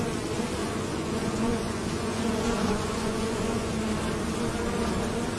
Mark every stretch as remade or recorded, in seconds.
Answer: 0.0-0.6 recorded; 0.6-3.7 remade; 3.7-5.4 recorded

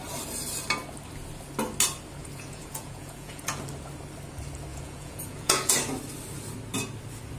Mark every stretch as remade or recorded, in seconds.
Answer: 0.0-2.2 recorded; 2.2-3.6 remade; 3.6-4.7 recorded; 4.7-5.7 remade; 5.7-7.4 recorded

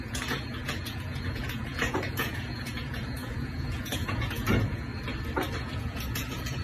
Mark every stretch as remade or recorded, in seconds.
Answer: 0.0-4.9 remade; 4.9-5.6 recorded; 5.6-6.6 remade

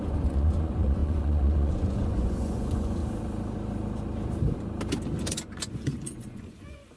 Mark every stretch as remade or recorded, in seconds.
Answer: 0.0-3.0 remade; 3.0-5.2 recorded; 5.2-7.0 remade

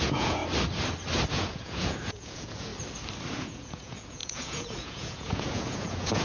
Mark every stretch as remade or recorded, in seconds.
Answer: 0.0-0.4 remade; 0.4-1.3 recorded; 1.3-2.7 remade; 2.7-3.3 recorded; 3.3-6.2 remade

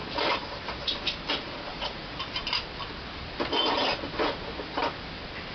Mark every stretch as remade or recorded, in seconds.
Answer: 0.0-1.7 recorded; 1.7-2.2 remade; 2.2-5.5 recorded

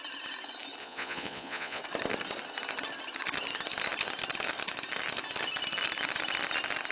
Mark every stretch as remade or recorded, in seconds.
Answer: 0.0-0.8 recorded; 0.8-1.8 remade; 1.8-6.9 recorded

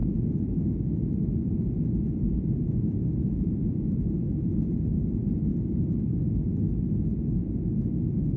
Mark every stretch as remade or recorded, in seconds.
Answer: 0.0-0.7 remade; 0.7-1.4 recorded; 1.4-4.0 remade; 4.0-8.4 recorded